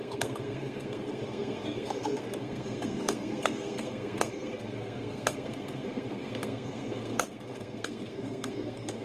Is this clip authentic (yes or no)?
no